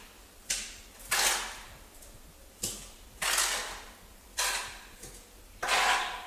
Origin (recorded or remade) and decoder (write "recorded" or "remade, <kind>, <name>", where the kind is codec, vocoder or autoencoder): recorded